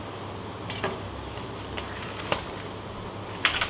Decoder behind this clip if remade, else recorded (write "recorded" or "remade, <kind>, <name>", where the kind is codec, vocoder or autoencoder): recorded